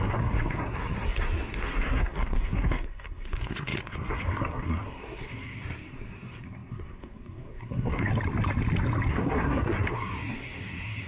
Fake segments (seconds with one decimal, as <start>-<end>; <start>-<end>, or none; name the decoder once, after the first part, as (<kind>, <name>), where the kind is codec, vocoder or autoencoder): 0.0-8.1 (codec, SNAC); 9.1-11.1